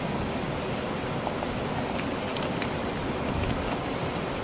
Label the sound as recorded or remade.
recorded